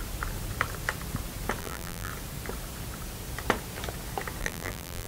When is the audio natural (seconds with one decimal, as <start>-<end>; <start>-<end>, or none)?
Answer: 0.0-1.6; 2.1-4.4